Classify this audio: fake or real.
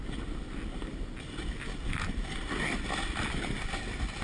real